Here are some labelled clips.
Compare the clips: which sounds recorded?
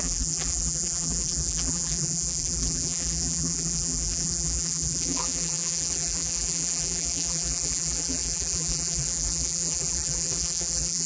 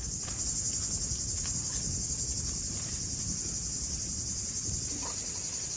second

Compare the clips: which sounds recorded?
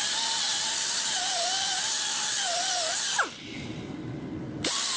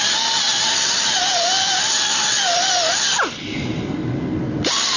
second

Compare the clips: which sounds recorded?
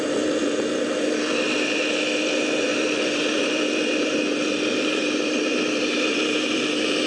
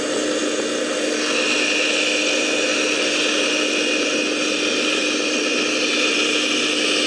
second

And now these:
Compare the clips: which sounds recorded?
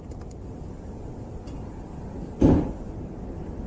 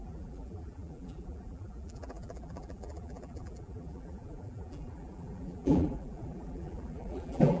first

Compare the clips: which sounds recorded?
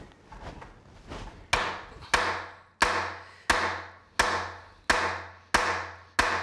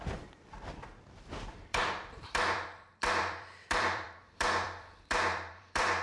first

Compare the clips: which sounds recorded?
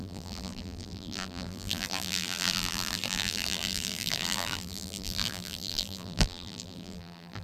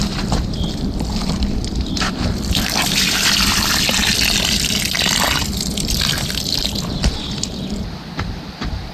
second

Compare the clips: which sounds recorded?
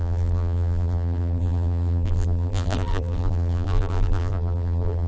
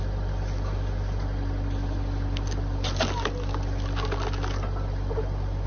second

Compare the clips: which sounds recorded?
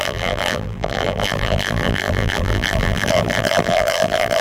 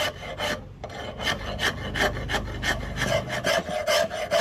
second